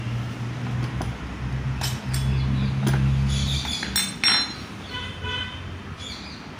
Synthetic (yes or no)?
no